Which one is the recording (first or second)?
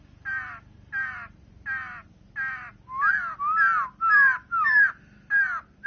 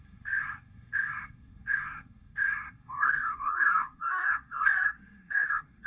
first